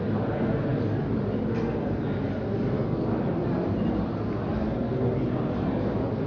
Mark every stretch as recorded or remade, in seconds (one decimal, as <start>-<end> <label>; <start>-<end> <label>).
0.0-6.3 recorded